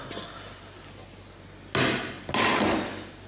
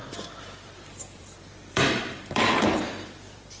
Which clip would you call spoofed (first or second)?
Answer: second